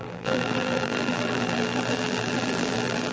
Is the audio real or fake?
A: fake